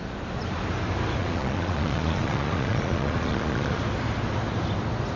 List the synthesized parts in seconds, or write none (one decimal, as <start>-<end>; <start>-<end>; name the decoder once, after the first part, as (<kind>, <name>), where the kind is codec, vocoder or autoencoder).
1.2-3.8 (vocoder, Vocos)